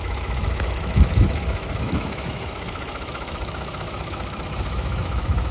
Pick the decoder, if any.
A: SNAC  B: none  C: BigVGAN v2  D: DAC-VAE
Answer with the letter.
D